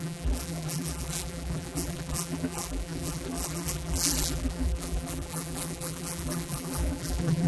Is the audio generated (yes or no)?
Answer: yes